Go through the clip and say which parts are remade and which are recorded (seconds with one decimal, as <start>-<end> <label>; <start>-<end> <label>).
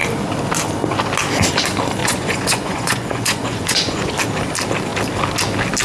0.0-2.0 recorded; 2.0-4.1 remade; 4.1-5.8 recorded